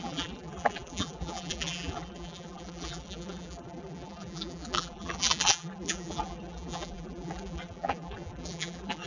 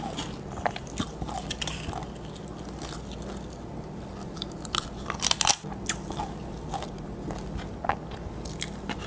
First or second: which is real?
second